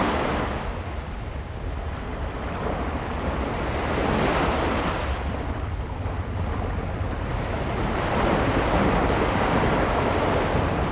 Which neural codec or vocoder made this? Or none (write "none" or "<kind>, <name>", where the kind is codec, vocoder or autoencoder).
none